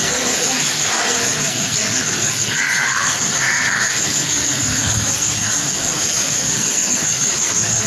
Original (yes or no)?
no